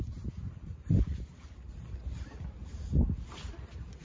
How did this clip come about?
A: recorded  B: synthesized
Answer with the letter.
A